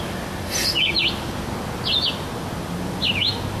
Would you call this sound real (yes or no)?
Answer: yes